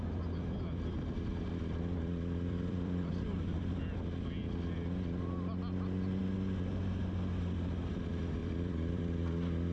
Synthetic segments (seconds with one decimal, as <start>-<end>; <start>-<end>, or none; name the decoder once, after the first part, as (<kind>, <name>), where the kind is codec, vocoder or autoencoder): 1.3-3.1 (vocoder, BigVGAN v2); 8.4-9.0